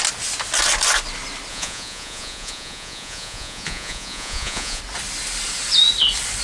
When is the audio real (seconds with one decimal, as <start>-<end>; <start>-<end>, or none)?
0.0-1.5; 4.8-6.4